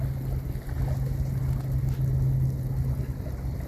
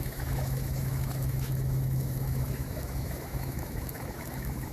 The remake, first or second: second